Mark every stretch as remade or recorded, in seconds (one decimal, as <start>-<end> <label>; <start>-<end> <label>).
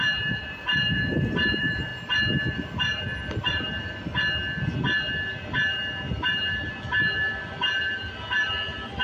0.0-1.9 remade; 1.9-3.4 recorded; 3.4-4.1 remade; 4.1-9.0 recorded